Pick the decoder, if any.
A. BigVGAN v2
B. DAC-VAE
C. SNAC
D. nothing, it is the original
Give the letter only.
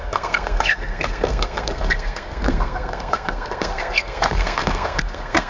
C